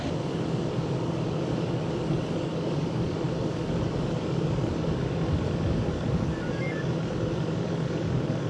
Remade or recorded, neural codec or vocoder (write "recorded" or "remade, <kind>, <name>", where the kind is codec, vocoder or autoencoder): remade, codec, DAC